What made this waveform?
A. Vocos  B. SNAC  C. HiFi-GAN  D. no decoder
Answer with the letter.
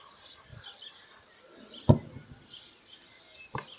D